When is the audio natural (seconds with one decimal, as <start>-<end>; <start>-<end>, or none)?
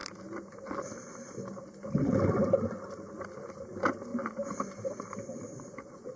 0.0-3.5; 4.1-4.7